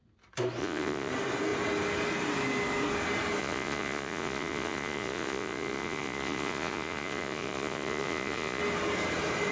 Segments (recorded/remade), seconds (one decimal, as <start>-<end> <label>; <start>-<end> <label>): 0.0-0.6 recorded; 0.6-1.1 remade; 1.1-3.4 recorded; 3.4-8.6 remade; 8.6-9.5 recorded